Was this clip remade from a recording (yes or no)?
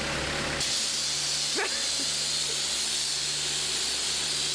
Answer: no